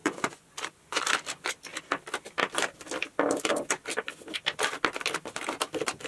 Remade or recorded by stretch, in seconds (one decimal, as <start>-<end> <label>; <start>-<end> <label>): 0.0-1.0 remade; 1.0-6.1 recorded